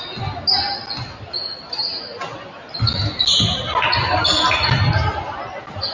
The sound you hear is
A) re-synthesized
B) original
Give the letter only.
B